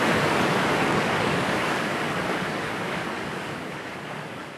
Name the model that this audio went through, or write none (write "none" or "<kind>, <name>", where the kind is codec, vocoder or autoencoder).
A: codec, DAC